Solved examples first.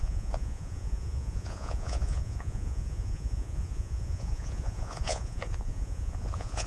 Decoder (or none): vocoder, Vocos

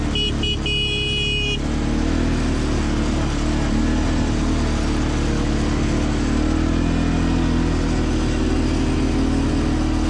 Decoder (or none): none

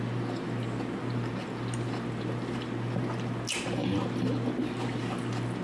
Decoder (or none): none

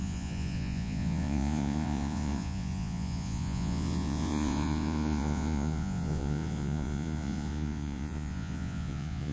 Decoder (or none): vocoder, Vocos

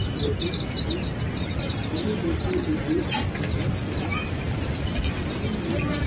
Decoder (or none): none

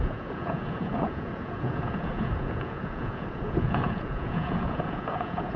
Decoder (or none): vocoder, Vocos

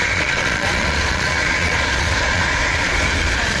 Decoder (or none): vocoder, Vocos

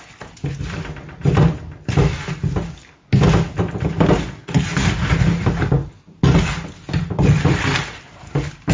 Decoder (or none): none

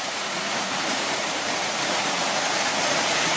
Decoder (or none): vocoder, Vocos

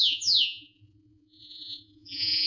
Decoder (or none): vocoder, Vocos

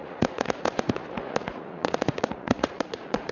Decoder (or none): vocoder, Vocos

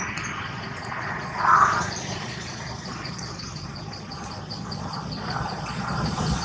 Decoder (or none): vocoder, Vocos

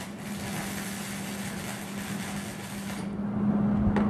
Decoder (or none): none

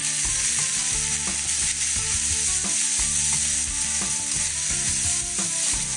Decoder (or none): none